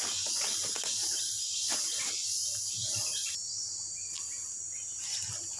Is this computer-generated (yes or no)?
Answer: no